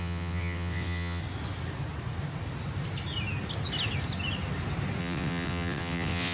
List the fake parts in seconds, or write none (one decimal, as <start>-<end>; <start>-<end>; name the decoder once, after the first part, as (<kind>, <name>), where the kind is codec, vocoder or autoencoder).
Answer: 0.0-1.2 (vocoder, WaveNeXt); 5.0-6.3